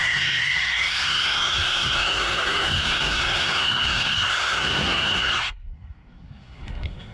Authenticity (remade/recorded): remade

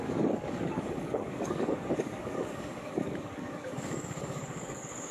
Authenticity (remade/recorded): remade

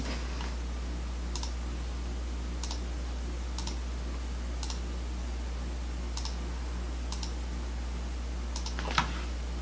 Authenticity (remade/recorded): recorded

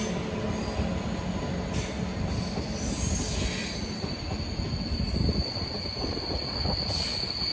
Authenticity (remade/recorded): recorded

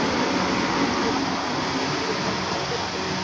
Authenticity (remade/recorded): recorded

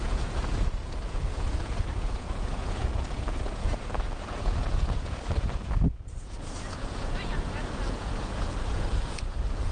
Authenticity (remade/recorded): remade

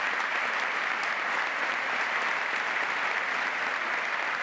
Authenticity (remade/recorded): recorded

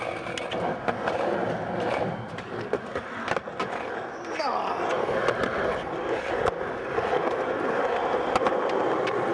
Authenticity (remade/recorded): recorded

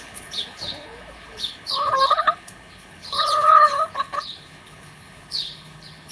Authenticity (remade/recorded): remade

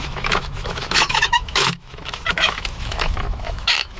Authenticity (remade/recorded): remade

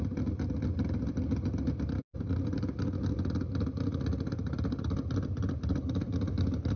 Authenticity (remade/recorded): recorded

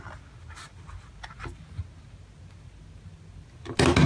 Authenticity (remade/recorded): recorded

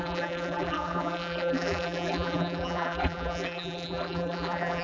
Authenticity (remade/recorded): remade